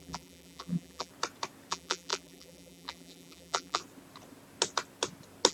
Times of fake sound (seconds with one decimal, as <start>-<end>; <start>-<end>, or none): 0.0-1.1; 1.7-3.8